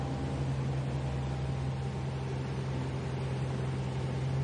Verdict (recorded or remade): recorded